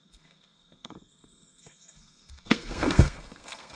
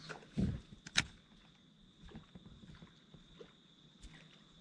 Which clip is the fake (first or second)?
first